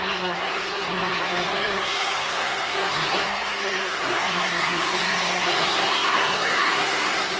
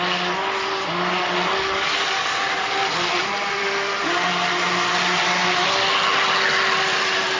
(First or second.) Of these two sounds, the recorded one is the second